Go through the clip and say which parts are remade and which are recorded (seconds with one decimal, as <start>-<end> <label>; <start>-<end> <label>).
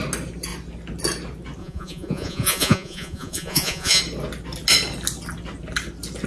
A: 0.0-1.6 recorded; 1.6-4.0 remade; 4.0-6.3 recorded